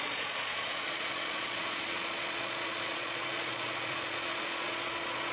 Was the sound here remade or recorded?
remade